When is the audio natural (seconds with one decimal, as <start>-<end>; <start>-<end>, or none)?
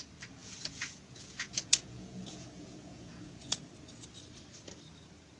0.0-0.4; 3.6-5.4